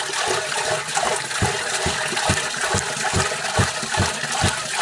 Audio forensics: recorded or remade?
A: recorded